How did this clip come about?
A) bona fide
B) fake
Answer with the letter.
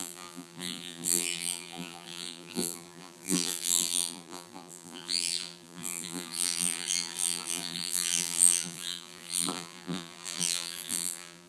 B